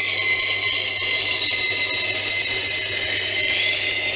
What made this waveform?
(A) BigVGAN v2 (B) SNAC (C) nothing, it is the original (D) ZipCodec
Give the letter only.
C